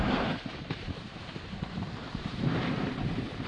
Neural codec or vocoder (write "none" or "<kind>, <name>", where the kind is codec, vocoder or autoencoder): vocoder, BigVGAN v2